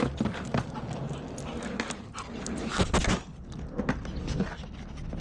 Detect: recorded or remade recorded